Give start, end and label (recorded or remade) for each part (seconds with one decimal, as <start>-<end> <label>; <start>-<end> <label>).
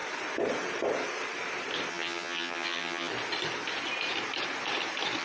0.0-1.9 recorded; 1.9-3.1 remade; 3.1-5.2 recorded